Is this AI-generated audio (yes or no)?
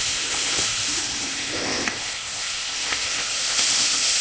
yes